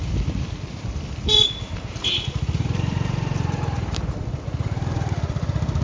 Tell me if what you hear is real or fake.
fake